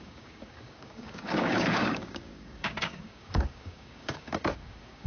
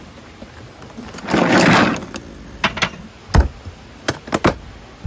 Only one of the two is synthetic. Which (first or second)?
first